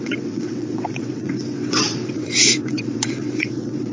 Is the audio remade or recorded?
remade